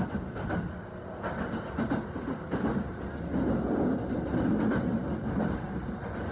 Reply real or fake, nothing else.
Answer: real